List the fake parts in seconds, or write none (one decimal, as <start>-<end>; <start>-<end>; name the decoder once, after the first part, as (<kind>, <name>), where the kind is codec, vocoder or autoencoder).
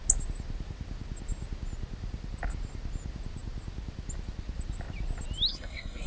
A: 5.5-6.1 (codec, SNAC)